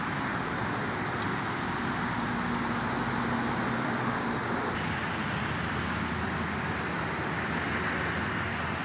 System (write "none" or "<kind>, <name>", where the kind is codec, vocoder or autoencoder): none